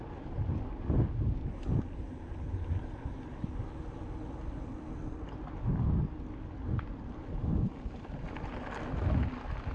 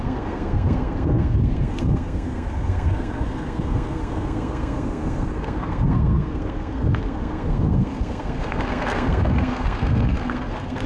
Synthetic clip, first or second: second